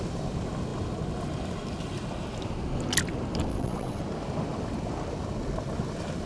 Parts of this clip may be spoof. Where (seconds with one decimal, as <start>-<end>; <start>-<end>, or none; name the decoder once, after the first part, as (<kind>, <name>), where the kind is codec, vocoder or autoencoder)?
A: 3.5-4.0 (vocoder, WaveNeXt)